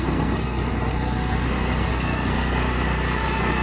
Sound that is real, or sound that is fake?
fake